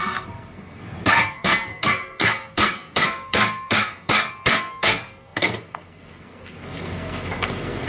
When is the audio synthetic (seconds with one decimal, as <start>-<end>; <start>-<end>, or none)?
0.0-7.9